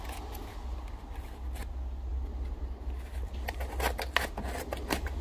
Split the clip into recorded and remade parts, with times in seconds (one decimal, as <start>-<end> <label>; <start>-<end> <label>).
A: 0.0-5.2 recorded